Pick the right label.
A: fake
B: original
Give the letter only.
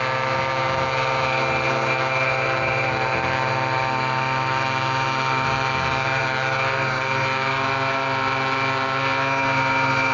B